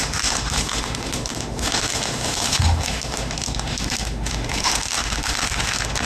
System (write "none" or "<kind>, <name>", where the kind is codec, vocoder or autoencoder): autoencoder, DAC-VAE